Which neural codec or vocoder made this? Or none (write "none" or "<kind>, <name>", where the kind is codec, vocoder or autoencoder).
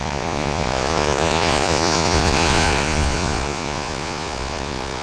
vocoder, Vocos